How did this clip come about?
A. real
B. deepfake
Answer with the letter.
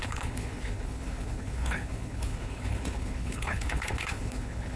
B